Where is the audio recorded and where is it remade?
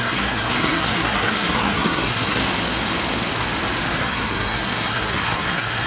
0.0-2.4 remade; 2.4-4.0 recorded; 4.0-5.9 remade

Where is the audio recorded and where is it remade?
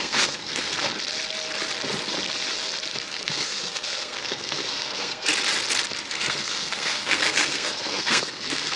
0.0-0.8 remade; 0.8-3.1 recorded; 3.1-5.3 remade; 5.3-6.1 recorded; 6.1-8.8 remade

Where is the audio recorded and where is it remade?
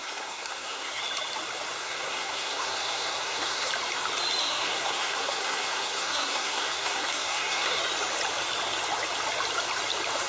0.0-1.0 remade; 1.0-1.8 recorded; 1.8-3.7 remade; 3.7-4.4 recorded; 4.4-7.8 remade; 7.8-10.3 recorded